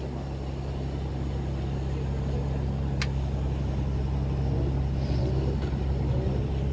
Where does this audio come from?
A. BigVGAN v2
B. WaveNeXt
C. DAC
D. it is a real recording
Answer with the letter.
D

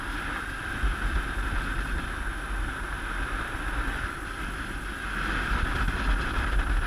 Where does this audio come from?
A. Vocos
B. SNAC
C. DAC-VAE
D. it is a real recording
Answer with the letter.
D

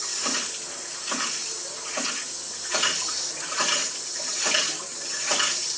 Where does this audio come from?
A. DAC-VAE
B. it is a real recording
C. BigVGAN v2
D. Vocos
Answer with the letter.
B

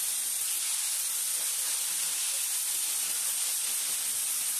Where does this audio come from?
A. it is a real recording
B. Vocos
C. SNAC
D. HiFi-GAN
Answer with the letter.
A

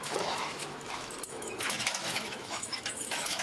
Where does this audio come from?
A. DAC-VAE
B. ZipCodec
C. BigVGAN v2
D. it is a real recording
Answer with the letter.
A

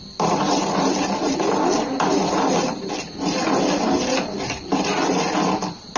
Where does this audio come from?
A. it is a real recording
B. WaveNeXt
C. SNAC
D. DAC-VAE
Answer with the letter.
A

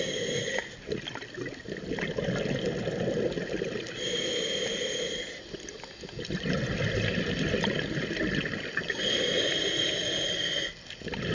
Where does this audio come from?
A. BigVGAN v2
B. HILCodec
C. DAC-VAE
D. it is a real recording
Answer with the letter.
D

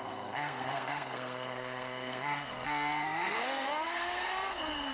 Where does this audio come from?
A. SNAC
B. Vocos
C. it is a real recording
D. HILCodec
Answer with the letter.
A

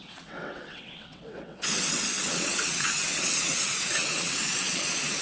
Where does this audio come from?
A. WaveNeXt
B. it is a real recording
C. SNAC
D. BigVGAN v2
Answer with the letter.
A